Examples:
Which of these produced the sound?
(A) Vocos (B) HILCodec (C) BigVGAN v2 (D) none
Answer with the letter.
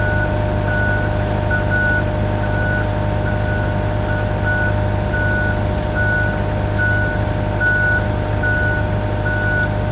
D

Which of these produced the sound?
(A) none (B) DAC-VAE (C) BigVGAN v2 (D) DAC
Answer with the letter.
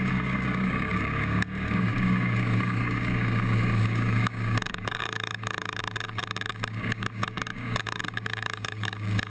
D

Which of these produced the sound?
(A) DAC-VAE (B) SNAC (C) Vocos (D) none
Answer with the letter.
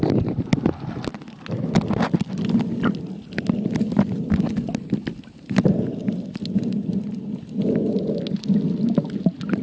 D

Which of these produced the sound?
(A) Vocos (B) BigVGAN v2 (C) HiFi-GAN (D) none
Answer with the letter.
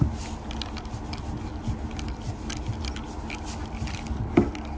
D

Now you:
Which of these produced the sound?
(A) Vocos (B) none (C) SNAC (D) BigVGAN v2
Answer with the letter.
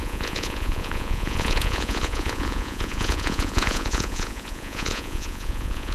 A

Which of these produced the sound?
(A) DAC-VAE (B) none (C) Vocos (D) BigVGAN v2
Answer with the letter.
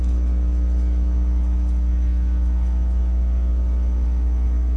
A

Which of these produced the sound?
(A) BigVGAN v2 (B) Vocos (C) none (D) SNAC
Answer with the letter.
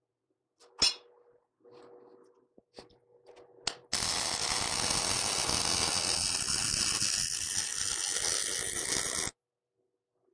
C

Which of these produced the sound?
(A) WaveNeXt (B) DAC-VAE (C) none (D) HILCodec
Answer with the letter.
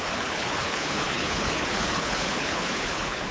D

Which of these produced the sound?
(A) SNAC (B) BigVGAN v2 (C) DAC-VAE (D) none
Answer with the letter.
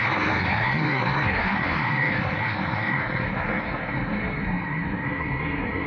A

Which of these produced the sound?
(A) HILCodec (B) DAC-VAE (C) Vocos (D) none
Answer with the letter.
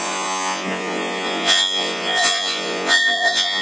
C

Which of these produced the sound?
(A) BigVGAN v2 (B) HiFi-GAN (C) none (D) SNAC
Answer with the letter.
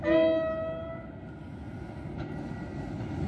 C